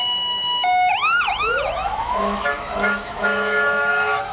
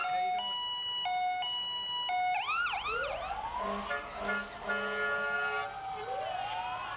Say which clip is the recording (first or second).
second